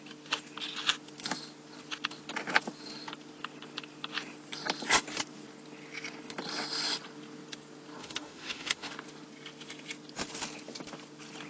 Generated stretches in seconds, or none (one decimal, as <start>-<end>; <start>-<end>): 8.0-8.9